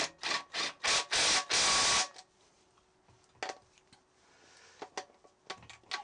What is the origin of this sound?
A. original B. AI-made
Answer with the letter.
A